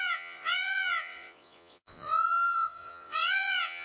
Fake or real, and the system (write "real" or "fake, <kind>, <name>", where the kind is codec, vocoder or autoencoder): fake, vocoder, Vocos